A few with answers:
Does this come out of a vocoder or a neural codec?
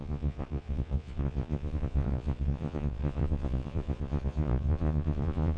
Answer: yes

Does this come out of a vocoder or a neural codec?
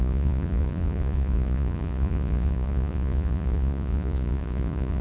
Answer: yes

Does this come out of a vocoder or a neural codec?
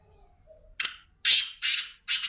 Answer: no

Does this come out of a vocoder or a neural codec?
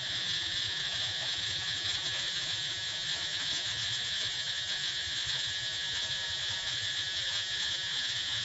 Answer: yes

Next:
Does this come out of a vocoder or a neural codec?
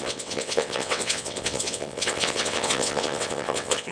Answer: yes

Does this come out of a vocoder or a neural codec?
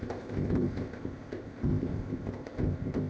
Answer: yes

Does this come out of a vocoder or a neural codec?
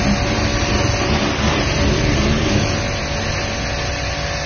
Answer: no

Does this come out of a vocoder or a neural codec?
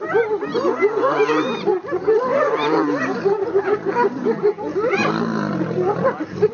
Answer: yes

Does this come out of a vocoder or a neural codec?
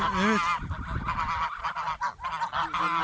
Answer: no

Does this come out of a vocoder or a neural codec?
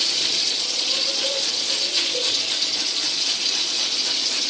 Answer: yes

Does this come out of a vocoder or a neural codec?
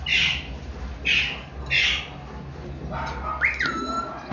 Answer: no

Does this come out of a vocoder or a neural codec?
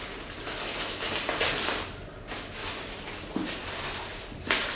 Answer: no